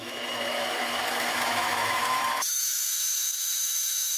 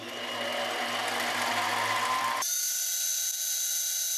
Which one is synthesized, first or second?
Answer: first